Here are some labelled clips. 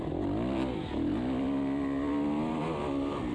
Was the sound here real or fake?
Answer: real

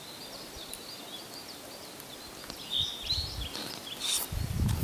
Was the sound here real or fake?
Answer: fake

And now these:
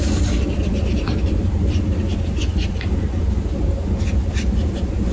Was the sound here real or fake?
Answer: real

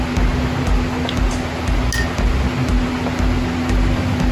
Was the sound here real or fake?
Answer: real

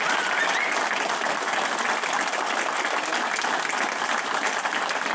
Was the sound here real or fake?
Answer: real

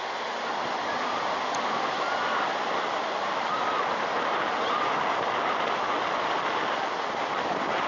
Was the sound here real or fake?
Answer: real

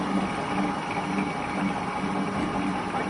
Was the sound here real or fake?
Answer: real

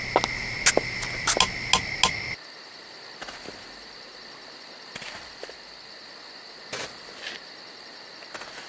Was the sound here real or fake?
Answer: real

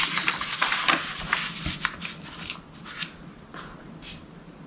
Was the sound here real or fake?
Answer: real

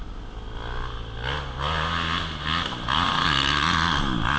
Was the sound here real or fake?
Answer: real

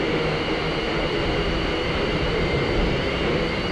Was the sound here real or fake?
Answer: fake